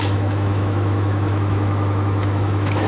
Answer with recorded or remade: remade